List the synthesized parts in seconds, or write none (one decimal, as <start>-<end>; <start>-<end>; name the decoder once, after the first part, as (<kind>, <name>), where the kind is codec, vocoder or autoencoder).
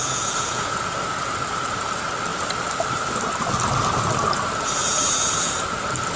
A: 0.0-0.8 (vocoder, Vocos); 4.8-5.5